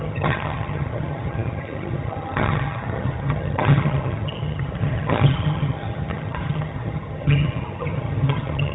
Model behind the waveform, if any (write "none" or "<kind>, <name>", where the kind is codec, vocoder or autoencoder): vocoder, HiFi-GAN